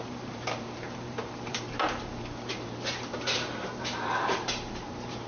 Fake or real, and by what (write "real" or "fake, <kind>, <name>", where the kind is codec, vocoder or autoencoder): fake, vocoder, BigVGAN v2